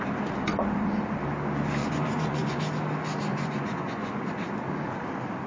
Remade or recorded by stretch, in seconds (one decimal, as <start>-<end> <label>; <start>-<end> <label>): 0.0-1.8 recorded; 1.8-2.6 remade; 2.6-3.3 recorded; 3.3-4.2 remade; 4.2-5.5 recorded